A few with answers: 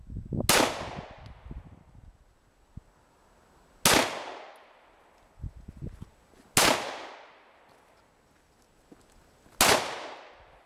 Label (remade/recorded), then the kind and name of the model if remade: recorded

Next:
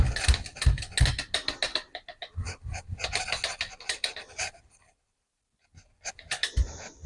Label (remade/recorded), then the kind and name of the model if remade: recorded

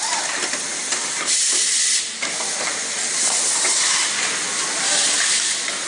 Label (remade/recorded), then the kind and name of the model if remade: recorded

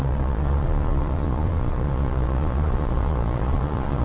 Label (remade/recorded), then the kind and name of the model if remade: remade, vocoder, Vocos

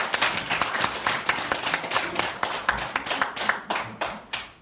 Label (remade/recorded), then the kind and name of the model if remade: recorded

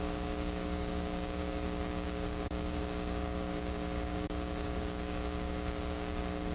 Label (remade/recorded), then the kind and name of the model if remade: remade, codec, DAC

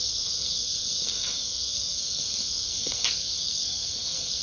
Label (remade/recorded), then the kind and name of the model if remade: remade, codec, SNAC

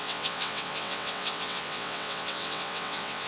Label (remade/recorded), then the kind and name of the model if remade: remade, vocoder, WaveNeXt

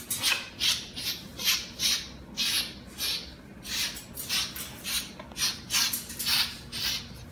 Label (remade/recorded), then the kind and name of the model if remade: recorded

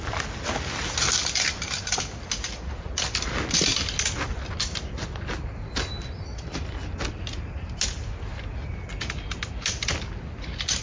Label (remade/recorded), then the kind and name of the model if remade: recorded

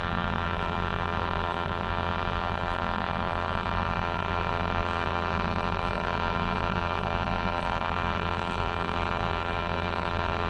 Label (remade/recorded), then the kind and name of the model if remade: remade, vocoder, BigVGAN v2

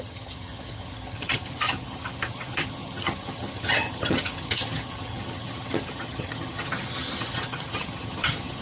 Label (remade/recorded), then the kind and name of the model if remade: remade, vocoder, HiFi-GAN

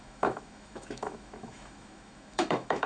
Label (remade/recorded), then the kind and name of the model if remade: remade, autoencoder, DAC-VAE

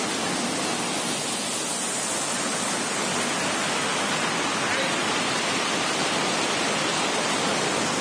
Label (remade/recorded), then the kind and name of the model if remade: recorded